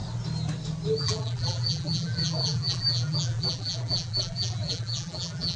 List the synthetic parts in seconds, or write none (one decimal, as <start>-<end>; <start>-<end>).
1.0-5.6